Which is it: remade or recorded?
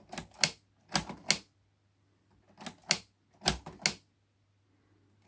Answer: recorded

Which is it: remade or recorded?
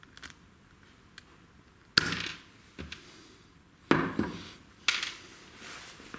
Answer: recorded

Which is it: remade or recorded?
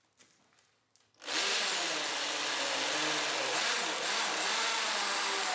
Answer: recorded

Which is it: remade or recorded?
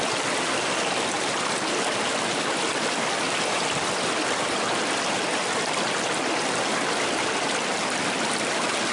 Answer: recorded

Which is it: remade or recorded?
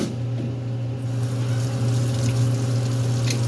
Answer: recorded